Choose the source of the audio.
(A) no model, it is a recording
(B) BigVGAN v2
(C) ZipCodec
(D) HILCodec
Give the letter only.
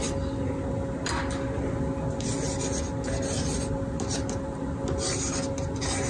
A